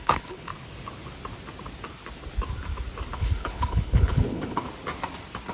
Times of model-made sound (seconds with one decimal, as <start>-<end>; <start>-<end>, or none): 0.0-0.5; 3.1-4.6